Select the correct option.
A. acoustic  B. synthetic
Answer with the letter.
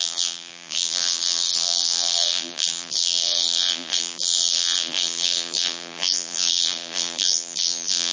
B